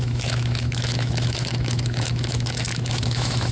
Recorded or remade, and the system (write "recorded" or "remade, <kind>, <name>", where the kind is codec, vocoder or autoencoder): remade, autoencoder, DAC-VAE